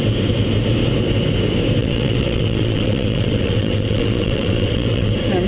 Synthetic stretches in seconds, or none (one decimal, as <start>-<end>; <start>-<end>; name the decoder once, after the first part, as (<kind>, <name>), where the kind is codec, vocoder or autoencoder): 1.8-5.1 (vocoder, WaveNeXt)